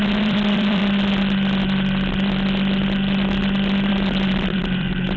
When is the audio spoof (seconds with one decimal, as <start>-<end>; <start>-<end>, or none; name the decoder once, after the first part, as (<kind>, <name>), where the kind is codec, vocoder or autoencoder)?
0.0-0.8 (vocoder, BigVGAN v2); 3.9-5.2

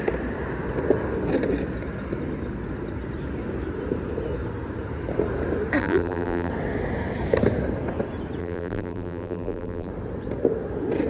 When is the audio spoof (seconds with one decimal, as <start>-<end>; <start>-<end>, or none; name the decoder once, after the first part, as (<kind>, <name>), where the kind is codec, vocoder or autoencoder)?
5.8-6.5 (vocoder, BigVGAN v2); 8.4-9.9